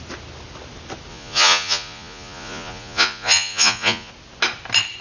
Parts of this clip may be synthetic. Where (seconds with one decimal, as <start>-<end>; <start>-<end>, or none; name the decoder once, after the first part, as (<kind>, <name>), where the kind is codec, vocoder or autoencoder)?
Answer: 1.1-4.1 (vocoder, Vocos)